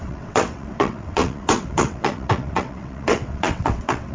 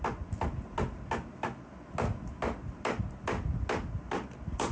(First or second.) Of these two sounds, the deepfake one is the first